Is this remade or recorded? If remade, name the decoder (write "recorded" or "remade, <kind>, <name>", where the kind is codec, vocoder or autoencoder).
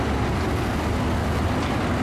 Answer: recorded